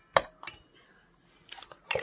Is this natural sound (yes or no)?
yes